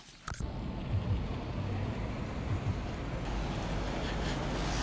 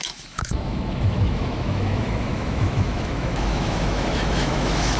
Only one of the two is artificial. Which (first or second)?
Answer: second